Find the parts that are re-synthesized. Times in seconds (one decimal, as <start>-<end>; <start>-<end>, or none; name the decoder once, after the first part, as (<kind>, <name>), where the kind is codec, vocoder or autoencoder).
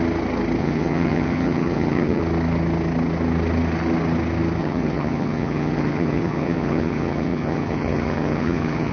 0.6-2.2 (vocoder, HiFi-GAN); 4.6-8.9